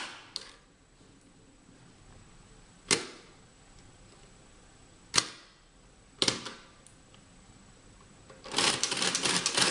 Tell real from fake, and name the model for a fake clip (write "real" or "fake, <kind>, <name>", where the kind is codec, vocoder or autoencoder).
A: real